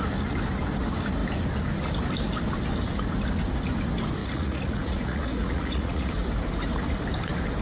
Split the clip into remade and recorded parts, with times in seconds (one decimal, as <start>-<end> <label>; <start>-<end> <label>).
0.0-4.2 recorded; 4.2-6.1 remade; 6.1-7.6 recorded